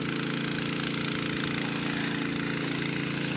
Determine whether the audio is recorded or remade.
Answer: recorded